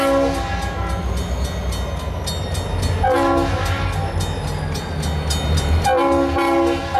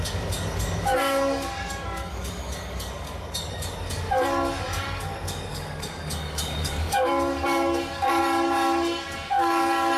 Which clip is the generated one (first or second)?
second